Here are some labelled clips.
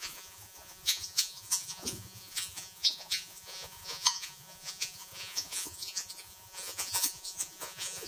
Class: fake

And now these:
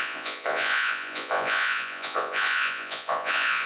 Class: fake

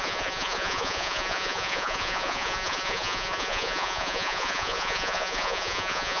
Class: fake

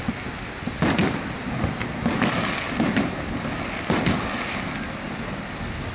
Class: real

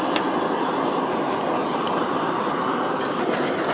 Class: real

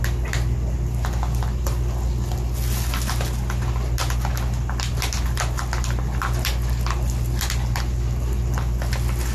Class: real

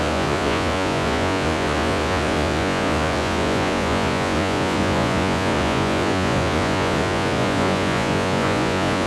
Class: fake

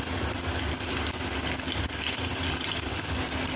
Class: real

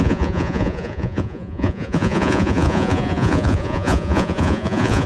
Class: fake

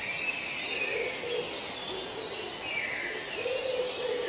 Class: real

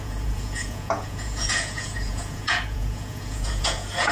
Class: fake